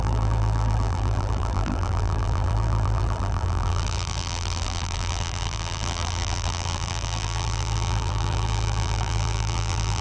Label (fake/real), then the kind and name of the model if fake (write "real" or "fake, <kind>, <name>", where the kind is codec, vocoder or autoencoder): fake, vocoder, BigVGAN v2